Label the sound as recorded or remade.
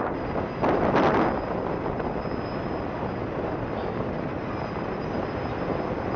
recorded